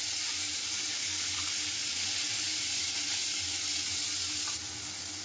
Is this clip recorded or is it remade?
recorded